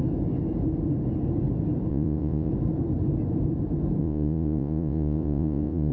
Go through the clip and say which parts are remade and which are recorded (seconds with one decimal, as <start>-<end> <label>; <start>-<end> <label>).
0.0-1.9 recorded; 1.9-2.5 remade; 2.5-4.0 recorded; 4.0-5.9 remade